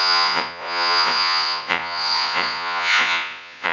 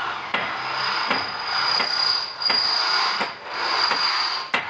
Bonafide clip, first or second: second